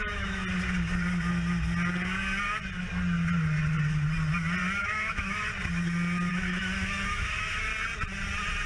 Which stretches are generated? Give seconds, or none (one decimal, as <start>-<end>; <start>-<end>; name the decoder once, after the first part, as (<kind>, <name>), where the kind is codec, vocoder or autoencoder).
0.0-0.4 (autoencoder, DAC-VAE); 4.8-5.5; 6.3-7.7